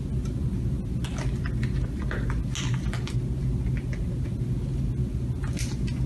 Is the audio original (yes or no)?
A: yes